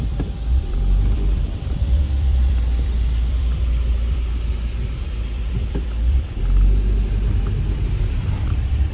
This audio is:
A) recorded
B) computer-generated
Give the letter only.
B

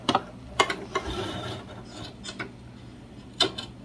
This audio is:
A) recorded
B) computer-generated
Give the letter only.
A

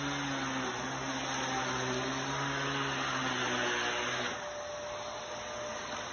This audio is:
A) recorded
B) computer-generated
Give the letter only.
A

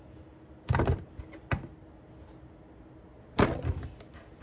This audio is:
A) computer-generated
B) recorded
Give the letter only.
B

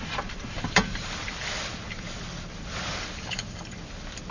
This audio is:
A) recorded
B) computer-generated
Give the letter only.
B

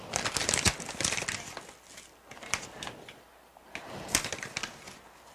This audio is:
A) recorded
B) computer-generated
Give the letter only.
A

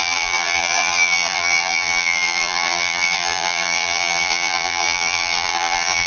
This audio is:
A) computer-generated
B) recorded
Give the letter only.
A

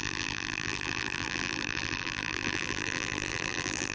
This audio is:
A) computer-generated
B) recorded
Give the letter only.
A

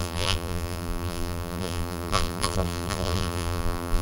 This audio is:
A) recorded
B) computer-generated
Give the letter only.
B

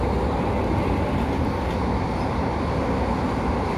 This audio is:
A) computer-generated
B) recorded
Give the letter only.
B